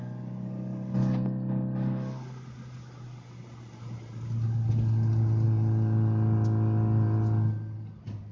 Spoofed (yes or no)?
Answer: no